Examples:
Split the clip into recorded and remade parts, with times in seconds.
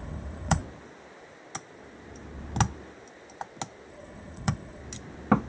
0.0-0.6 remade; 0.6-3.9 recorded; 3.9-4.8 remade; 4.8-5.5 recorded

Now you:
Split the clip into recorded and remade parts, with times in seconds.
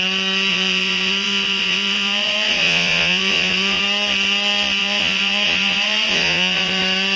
0.0-0.5 recorded; 0.5-3.8 remade; 3.8-4.8 recorded; 4.8-6.8 remade; 6.8-7.2 recorded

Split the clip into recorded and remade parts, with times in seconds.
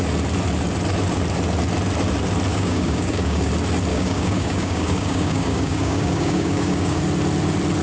0.0-2.5 recorded; 2.5-3.5 remade; 3.5-3.9 recorded; 3.9-7.0 remade; 7.0-7.8 recorded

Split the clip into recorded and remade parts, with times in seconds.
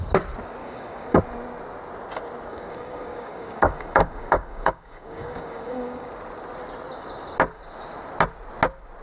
0.0-0.6 recorded; 0.6-1.2 remade; 1.2-2.5 recorded; 2.5-6.1 remade; 6.1-9.0 recorded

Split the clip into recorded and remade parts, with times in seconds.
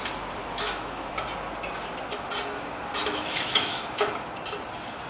0.0-0.4 recorded; 0.4-1.1 remade; 1.1-3.0 recorded; 3.0-4.1 remade; 4.1-5.1 recorded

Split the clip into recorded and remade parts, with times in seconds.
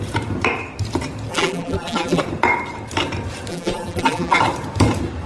0.0-1.3 recorded; 1.3-2.2 remade; 2.2-3.5 recorded; 3.5-4.4 remade; 4.4-5.3 recorded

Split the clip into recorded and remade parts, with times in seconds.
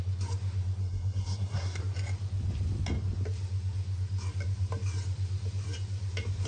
0.0-0.8 recorded; 0.8-1.8 remade; 1.8-6.5 recorded